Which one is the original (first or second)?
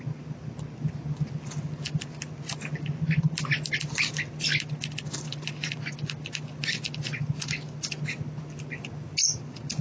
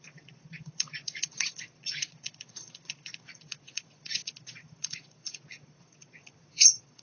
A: first